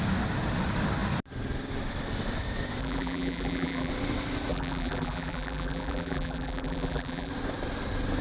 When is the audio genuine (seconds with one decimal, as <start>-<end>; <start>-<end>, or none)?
0.0-2.8; 3.9-4.5; 7.3-8.2